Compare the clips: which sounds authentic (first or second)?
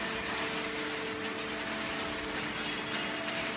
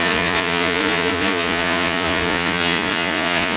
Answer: first